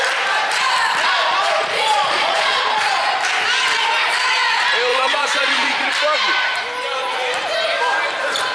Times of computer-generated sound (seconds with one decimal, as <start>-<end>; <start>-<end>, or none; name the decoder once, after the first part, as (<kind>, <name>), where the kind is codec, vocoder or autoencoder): 1.2-3.1 (vocoder, Vocos); 4.9-5.9